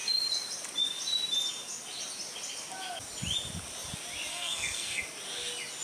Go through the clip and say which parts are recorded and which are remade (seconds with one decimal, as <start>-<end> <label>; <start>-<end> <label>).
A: 0.0-4.3 recorded; 4.3-5.0 remade; 5.0-5.8 recorded